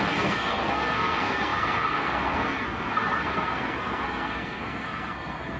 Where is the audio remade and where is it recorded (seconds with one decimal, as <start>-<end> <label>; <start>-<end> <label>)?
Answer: 0.0-5.6 remade